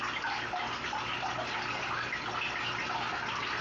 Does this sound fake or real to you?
real